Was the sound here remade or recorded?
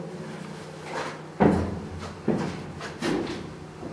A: recorded